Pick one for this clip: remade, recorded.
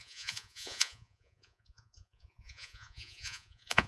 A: remade